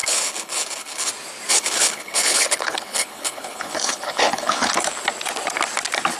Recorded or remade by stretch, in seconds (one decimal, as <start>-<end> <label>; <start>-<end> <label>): 0.0-1.1 remade; 1.1-1.5 recorded; 1.5-4.7 remade; 4.7-6.2 recorded